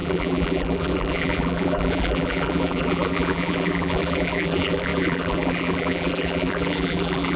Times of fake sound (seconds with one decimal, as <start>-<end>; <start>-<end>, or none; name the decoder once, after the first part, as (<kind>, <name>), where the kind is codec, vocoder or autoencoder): 0.0-7.4 (vocoder, BigVGAN v2)